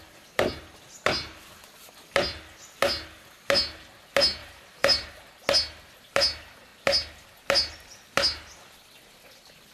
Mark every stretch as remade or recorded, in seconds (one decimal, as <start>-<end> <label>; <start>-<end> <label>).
0.0-4.4 recorded; 4.4-5.3 remade; 5.3-9.7 recorded